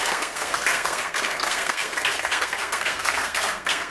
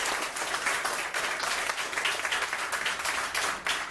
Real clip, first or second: second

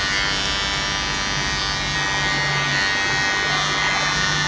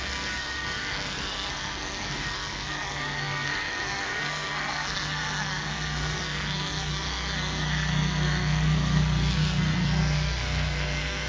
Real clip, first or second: first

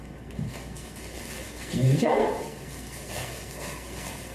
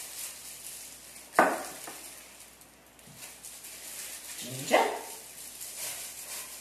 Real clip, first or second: second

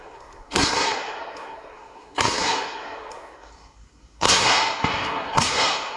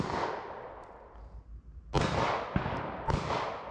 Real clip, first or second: second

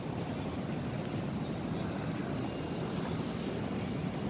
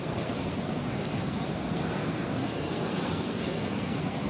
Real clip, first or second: first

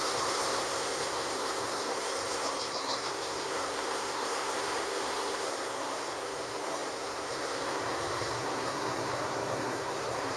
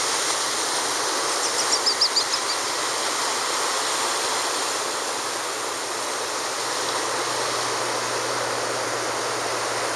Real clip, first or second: second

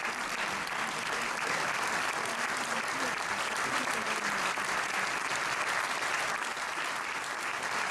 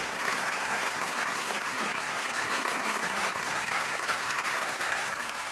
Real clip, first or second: first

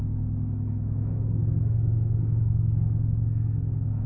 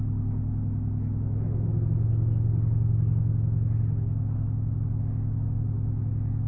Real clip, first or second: second